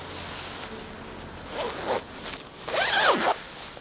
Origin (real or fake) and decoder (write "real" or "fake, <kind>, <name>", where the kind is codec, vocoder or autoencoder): real